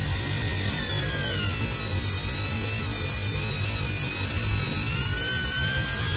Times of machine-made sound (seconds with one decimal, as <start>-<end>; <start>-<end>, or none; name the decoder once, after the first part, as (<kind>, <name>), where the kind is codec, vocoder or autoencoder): none